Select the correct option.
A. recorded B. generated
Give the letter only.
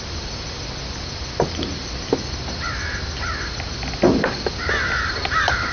A